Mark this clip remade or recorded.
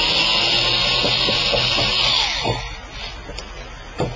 recorded